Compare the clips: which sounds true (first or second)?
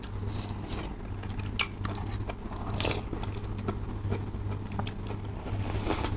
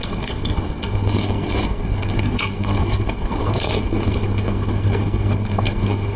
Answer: first